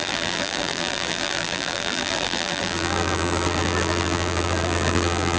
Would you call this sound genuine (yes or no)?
no